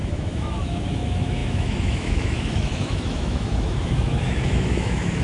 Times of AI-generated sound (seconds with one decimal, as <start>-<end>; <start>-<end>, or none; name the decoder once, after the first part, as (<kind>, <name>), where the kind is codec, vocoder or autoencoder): 0.0-5.2 (autoencoder, DAC-VAE)